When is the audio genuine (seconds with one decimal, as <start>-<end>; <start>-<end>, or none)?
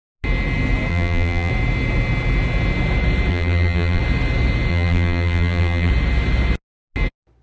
0.0-0.9; 1.5-3.3; 4.0-4.7; 5.9-7.4